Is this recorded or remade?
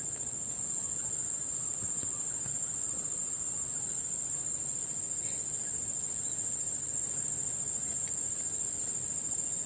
recorded